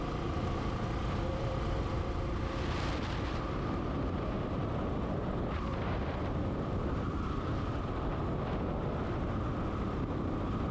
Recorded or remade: remade